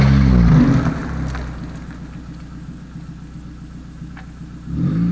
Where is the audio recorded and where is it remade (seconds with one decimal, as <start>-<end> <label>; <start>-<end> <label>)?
0.0-5.1 recorded